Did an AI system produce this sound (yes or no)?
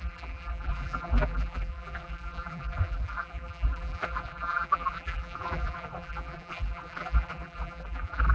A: yes